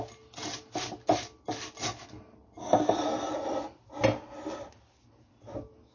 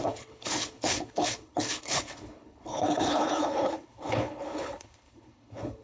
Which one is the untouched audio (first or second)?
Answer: first